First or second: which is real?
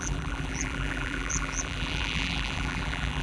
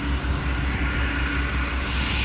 second